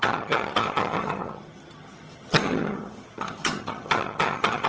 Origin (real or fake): fake